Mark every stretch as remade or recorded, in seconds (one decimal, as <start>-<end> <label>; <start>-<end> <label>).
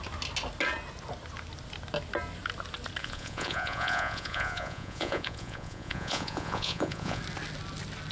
0.0-3.0 recorded; 3.0-7.2 remade; 7.2-8.1 recorded